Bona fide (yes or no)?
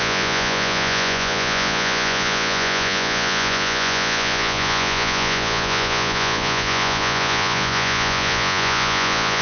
no